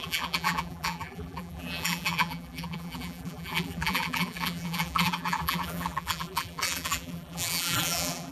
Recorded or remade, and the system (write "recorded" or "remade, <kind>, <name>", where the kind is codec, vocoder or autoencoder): remade, vocoder, BigVGAN v2